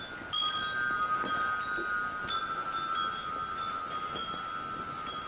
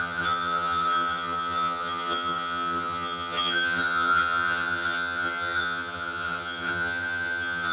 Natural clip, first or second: first